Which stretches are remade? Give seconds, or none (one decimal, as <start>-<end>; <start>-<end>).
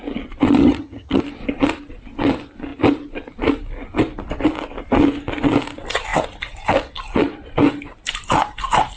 0.6-1.2